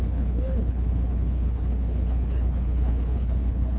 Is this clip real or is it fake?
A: fake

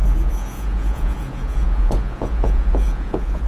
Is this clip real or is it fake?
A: fake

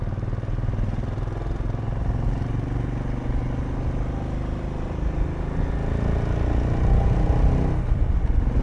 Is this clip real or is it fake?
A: real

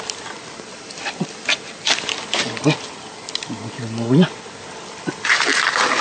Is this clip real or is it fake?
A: real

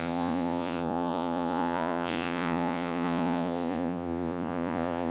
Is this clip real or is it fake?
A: fake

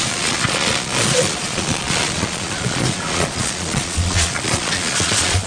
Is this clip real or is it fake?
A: fake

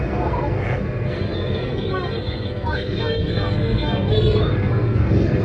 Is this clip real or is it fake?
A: fake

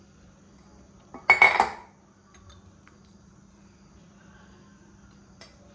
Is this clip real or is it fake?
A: real